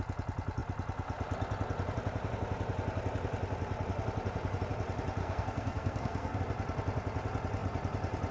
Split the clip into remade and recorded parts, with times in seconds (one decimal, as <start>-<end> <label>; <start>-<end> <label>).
0.0-5.2 recorded; 5.2-6.4 remade; 6.4-8.3 recorded